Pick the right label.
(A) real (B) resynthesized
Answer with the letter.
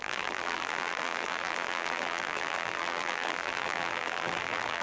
B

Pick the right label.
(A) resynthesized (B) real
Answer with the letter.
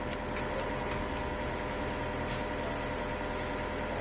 B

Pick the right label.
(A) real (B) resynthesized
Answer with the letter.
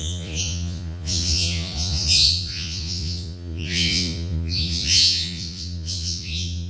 B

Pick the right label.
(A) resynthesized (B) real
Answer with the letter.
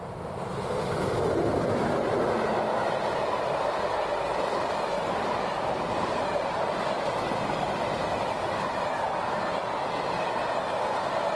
B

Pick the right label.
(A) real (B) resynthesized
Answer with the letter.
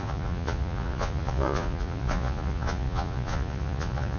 B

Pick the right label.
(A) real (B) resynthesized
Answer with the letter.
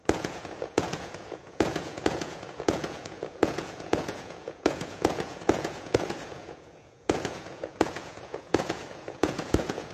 B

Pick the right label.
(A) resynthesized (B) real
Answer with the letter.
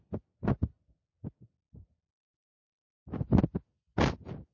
B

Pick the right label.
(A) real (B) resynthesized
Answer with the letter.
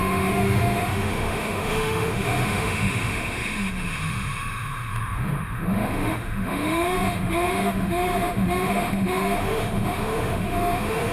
B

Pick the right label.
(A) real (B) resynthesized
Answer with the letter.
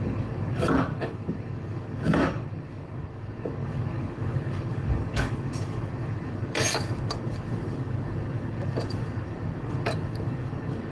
B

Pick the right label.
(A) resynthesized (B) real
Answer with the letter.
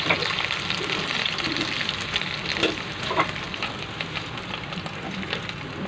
B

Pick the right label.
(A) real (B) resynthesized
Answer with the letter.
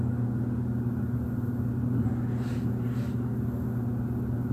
A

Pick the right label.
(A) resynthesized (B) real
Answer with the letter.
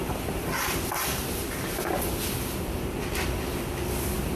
A